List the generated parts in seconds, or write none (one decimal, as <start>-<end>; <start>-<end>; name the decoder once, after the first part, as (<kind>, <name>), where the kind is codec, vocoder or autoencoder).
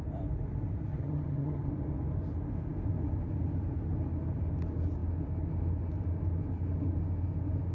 0.9-1.7 (vocoder, HiFi-GAN)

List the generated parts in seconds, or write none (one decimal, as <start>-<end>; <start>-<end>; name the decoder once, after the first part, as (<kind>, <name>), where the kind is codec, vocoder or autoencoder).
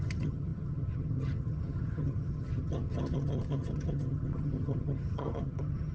0.0-5.9 (vocoder, HiFi-GAN)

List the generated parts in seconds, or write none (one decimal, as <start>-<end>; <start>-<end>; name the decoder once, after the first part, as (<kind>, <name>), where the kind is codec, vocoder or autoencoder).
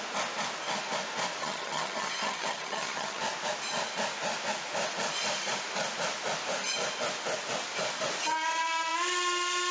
1.4-3.2 (vocoder, HiFi-GAN)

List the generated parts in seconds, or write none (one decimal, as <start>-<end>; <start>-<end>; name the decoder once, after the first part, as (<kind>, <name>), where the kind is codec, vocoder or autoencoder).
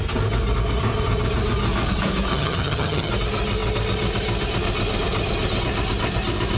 2.3-3.1 (vocoder, HiFi-GAN)